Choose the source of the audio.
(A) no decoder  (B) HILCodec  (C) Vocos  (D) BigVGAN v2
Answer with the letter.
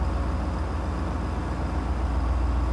A